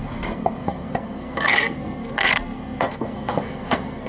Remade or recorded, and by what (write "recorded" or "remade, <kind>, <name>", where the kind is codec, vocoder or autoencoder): remade, codec, SNAC